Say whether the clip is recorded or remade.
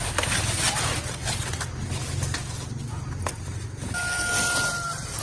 recorded